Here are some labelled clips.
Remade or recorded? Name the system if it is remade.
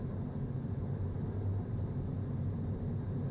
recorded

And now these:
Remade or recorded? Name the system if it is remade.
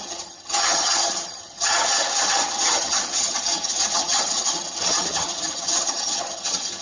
remade, vocoder, HiFi-GAN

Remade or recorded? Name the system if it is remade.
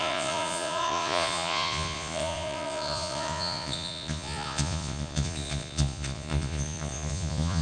remade, vocoder, Vocos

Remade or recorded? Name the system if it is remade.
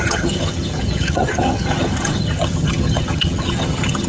remade, vocoder, HiFi-GAN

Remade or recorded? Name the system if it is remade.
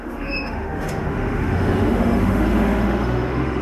remade, autoencoder, DAC-VAE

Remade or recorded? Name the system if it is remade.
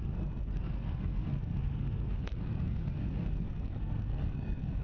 remade, codec, SNAC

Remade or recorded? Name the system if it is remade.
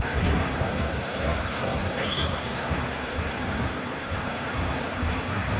remade, codec, SNAC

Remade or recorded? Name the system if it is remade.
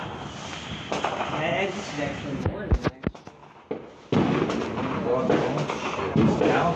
recorded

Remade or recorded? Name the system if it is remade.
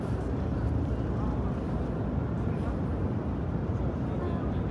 recorded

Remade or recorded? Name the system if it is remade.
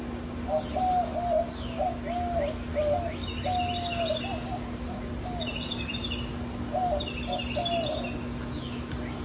recorded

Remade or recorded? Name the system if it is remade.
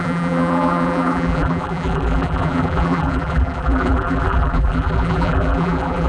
remade, vocoder, BigVGAN v2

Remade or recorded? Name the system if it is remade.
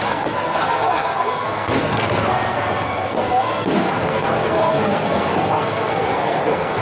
remade, codec, SNAC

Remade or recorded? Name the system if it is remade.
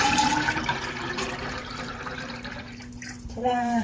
remade, vocoder, BigVGAN v2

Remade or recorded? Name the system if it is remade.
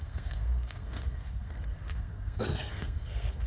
remade, codec, SNAC